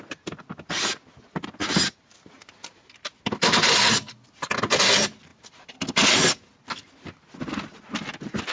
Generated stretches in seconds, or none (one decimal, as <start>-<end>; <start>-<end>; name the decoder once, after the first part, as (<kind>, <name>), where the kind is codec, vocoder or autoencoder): none